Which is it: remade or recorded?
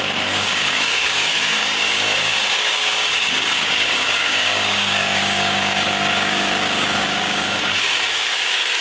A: remade